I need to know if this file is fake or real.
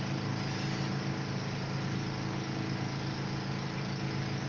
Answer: real